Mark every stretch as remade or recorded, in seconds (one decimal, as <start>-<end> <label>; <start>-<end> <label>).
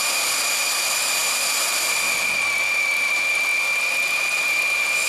0.0-5.1 recorded